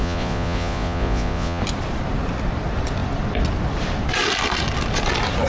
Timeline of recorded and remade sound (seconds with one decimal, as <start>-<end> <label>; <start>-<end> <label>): 0.0-1.6 remade; 1.6-5.5 recorded